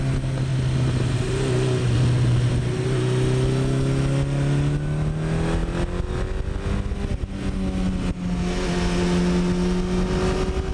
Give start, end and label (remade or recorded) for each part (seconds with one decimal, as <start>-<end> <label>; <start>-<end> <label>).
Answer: 0.0-10.7 recorded

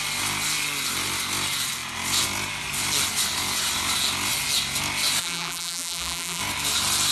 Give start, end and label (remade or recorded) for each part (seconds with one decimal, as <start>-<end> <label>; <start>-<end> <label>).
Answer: 0.0-5.2 recorded; 5.2-6.4 remade; 6.4-7.1 recorded